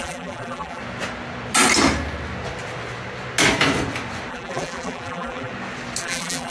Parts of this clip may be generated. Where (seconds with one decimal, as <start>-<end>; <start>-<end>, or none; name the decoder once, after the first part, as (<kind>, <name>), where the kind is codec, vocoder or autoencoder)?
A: 0.0-0.8 (vocoder, BigVGAN v2); 4.3-5.5; 6.0-6.5

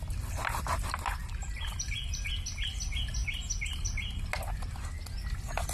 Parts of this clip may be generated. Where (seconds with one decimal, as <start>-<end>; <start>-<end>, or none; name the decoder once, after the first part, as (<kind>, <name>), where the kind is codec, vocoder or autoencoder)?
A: 1.2-2.3 (vocoder, BigVGAN v2); 3.2-4.3

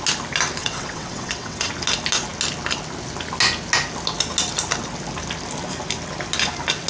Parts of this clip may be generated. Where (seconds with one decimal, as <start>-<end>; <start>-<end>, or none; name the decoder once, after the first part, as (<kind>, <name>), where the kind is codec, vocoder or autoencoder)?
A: 0.6-1.7 (vocoder, WaveNeXt)

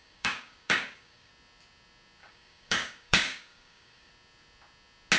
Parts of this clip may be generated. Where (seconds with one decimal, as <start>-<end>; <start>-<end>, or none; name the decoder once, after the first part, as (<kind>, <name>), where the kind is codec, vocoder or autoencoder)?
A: 0.0-1.3 (codec, DAC); 2.2-4.1

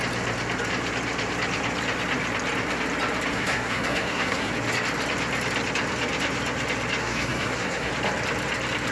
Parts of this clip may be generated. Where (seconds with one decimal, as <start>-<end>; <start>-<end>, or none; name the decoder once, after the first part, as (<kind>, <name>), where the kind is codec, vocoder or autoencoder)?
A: 3.3-4.5 (codec, SNAC); 7.0-7.9

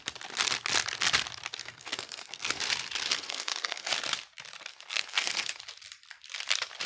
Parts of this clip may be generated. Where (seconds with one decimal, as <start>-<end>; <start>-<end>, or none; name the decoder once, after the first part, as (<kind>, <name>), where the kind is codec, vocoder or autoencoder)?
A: 1.6-2.6 (codec, SNAC); 3.1-3.9; 4.7-5.6